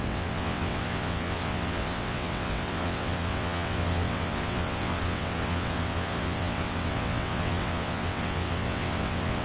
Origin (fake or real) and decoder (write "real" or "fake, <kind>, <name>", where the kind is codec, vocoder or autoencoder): fake, vocoder, WaveNeXt